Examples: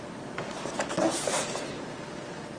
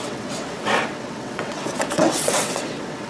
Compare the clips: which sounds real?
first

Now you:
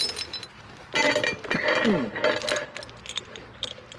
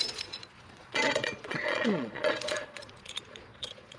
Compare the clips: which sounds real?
first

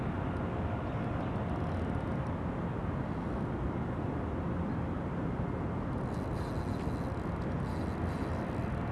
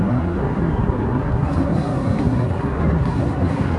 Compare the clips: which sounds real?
first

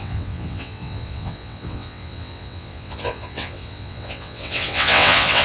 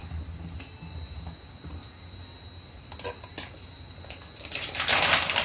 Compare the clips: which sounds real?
second